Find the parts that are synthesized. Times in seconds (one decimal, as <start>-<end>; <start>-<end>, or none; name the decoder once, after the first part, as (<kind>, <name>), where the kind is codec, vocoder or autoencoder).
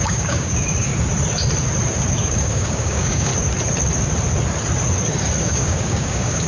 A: 0.0-0.9 (codec, DAC); 2.1-3.3; 5.4-6.5